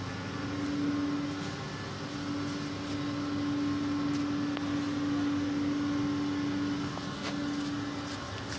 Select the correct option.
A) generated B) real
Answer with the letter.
B